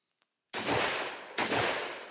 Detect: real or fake real